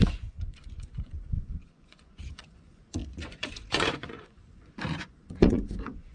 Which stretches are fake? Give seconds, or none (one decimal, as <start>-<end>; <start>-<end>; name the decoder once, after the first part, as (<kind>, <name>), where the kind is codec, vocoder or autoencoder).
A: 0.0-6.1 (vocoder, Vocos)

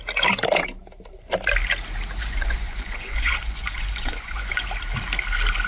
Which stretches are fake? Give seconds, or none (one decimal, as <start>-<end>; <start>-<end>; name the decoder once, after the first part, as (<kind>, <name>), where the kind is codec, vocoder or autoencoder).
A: 2.2-4.5 (vocoder, Vocos)

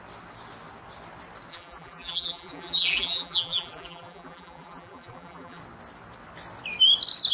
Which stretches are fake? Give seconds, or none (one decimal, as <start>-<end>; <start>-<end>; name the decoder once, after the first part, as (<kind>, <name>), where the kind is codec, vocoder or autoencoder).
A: 1.5-5.6 (vocoder, BigVGAN v2)